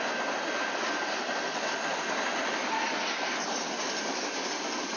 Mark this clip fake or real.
real